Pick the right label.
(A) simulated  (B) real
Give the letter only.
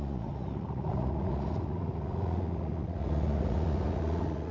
A